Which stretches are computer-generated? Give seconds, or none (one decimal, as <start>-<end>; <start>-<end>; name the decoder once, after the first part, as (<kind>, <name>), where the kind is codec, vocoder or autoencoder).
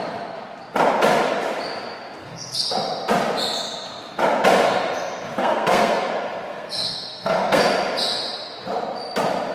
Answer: 2.2-2.7 (codec, SNAC); 5.4-6.1; 6.5-7.6